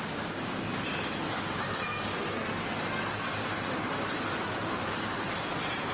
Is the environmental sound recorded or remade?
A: recorded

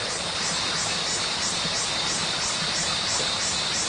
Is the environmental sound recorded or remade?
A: recorded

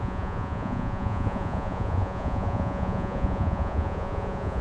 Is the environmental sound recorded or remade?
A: remade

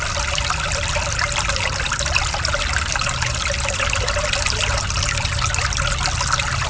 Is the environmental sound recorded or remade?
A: recorded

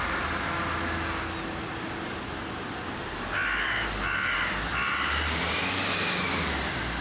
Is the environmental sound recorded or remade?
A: recorded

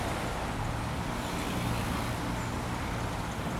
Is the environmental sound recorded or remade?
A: recorded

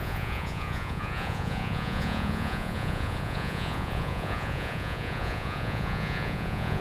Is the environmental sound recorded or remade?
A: remade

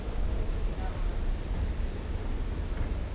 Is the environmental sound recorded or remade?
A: recorded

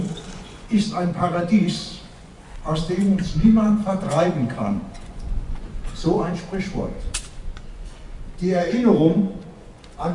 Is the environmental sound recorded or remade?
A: remade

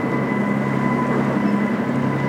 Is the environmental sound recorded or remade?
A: recorded